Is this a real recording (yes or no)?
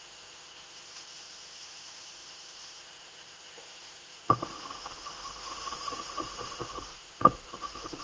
no